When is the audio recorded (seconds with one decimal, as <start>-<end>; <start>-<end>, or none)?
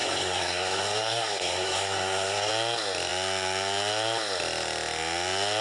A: 2.5-5.6